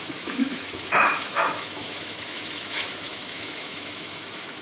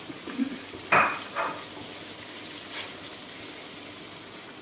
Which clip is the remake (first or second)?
first